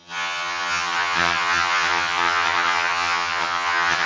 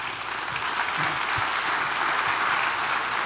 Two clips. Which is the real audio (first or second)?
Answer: second